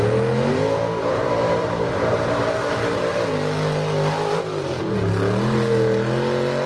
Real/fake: real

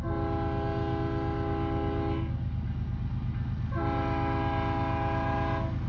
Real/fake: real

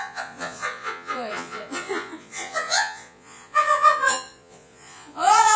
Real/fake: fake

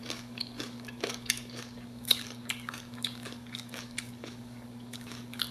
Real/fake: fake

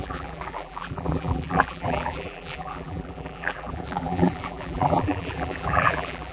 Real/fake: fake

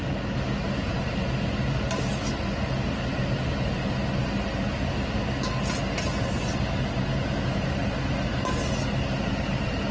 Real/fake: real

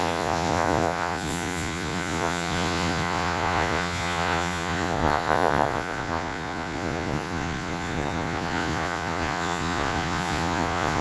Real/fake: fake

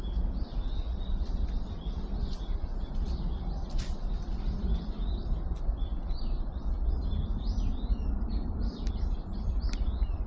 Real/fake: real